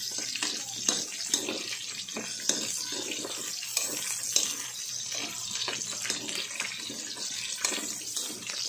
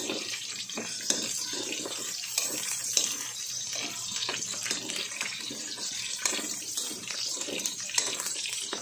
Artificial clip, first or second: second